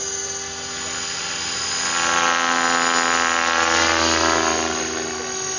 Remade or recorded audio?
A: recorded